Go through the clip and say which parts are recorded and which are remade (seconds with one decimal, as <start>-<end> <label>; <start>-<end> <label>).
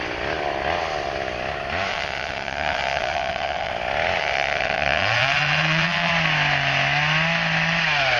0.0-1.9 recorded; 1.9-3.7 remade; 3.7-4.2 recorded; 4.2-6.1 remade; 6.1-8.2 recorded